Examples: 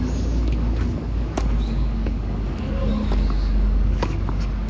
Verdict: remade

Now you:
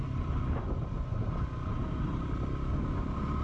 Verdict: recorded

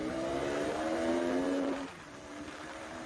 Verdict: remade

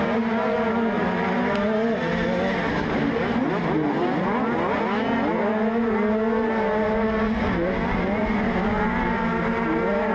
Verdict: recorded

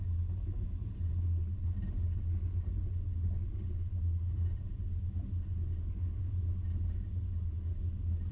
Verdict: recorded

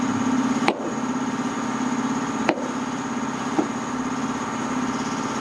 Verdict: recorded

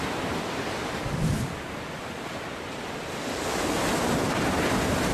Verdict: recorded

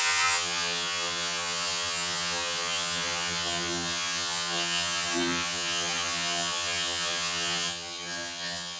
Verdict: remade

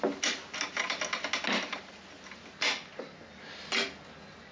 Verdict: recorded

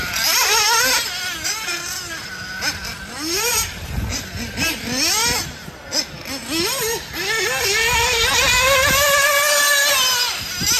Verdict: recorded